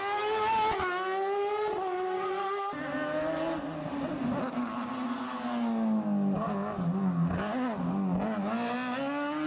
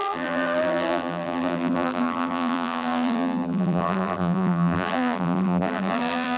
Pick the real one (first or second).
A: first